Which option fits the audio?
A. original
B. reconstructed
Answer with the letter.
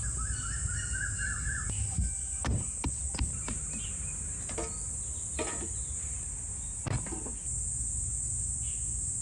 A